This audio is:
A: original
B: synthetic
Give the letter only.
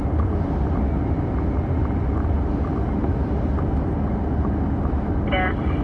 A